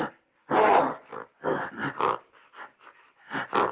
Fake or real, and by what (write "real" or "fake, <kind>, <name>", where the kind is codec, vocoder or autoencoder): real